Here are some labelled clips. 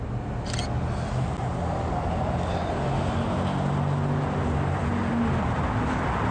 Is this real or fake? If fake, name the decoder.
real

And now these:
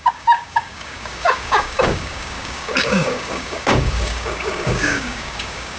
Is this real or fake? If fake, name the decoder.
fake, codec, DAC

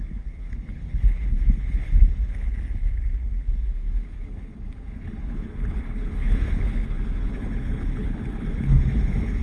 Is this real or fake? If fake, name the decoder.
fake, codec, HILCodec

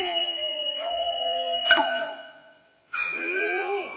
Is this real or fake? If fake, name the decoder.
fake, vocoder, Vocos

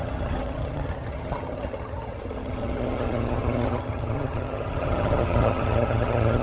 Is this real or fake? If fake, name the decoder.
fake, vocoder, HiFi-GAN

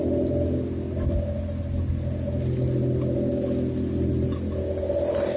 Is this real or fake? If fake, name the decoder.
real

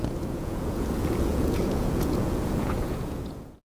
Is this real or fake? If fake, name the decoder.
fake, vocoder, Vocos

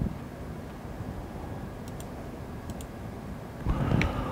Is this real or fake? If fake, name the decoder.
real